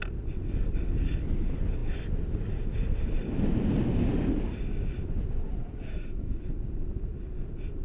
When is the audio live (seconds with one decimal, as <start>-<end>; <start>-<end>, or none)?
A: 0.0-5.6; 6.5-7.8